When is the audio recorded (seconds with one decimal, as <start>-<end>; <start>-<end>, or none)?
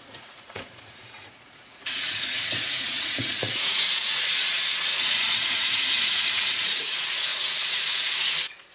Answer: none